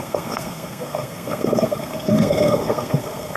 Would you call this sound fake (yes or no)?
yes